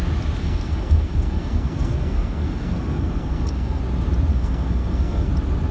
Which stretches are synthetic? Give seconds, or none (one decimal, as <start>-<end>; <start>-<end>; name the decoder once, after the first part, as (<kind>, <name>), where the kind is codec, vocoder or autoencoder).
0.4-3.8 (codec, SNAC); 4.3-5.3